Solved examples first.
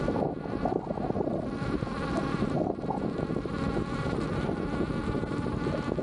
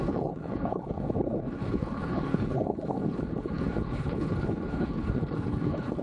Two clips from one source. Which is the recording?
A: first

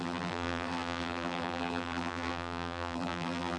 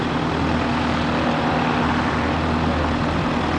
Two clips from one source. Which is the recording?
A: second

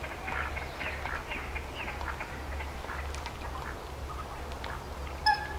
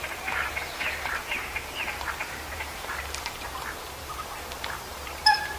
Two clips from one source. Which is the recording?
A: first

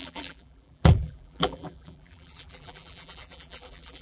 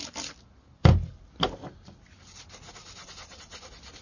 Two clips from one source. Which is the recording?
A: second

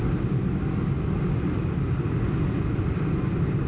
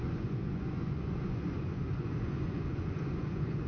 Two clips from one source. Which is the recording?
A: first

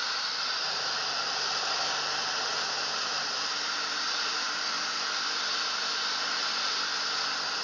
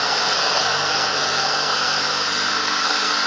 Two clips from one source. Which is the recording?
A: first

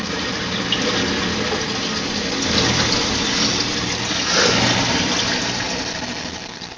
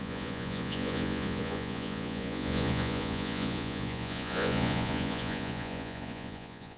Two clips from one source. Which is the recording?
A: first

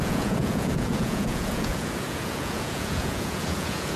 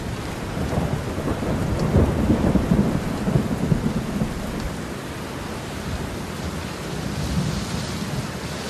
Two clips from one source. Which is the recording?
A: second